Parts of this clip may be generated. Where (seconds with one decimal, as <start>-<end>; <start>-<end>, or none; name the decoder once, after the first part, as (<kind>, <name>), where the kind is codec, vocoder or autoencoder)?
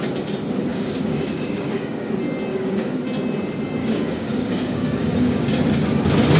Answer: 0.7-2.1 (codec, DAC); 2.5-3.0; 3.8-5.4